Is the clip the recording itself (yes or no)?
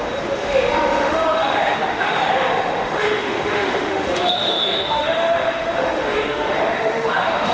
no